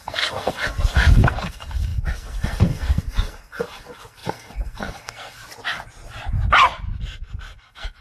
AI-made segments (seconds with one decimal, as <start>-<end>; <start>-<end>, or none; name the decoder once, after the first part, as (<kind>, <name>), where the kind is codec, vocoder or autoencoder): 0.0-5.4 (codec, SNAC); 7.0-8.0